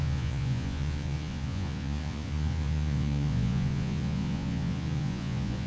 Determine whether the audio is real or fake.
fake